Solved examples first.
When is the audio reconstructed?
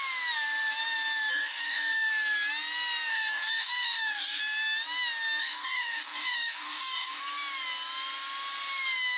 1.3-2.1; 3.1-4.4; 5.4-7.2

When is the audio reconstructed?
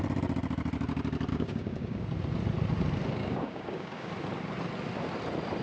1.3-2.0; 3.2-4.1